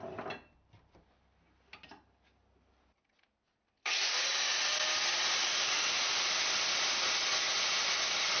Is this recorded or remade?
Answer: recorded